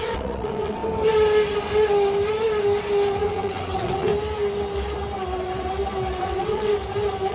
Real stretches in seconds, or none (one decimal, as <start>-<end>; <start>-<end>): 0.8-3.2; 4.1-6.2; 6.7-7.3